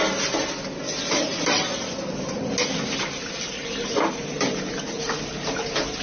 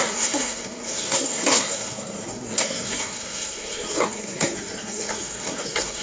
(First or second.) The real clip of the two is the first